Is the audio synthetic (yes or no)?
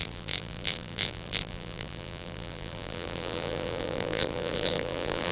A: yes